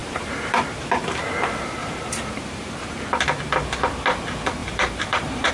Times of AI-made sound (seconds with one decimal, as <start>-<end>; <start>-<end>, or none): 0.0-0.6; 1.8-3.1; 4.6-5.5